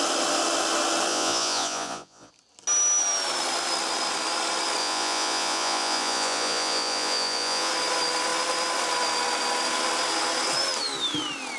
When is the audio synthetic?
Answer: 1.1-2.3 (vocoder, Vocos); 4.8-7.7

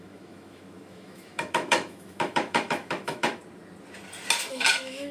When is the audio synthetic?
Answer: 0.0-3.4 (autoencoder, DAC-VAE); 4.5-5.1

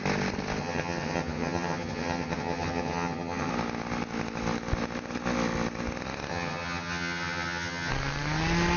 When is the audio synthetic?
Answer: 0.6-3.5 (vocoder, HiFi-GAN); 6.3-7.9

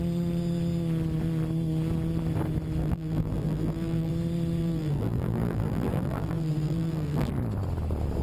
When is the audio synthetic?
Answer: 2.8-4.1 (vocoder, BigVGAN v2); 4.6-7.3

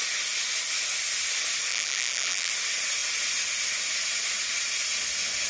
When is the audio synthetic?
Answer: 1.7-2.5 (vocoder, BigVGAN v2)

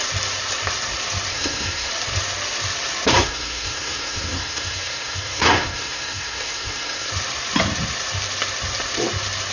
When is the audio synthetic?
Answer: 1.3-1.9 (codec, SNAC); 3.1-7.1

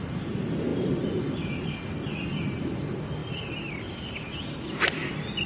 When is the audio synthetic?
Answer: none

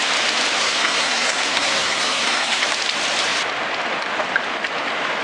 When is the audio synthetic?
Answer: 0.6-2.6 (codec, SNAC)